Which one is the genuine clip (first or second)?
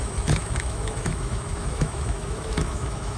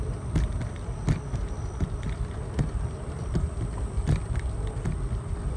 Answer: second